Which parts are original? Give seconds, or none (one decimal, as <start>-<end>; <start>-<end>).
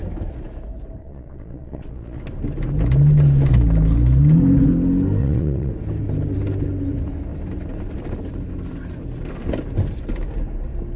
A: 0.0-1.0; 2.2-5.2; 5.7-11.0